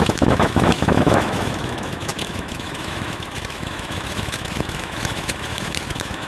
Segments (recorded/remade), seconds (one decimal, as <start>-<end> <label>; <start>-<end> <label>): 0.0-6.3 remade